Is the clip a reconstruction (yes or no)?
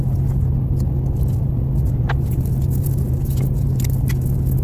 no